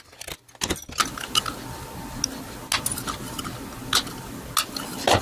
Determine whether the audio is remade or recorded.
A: recorded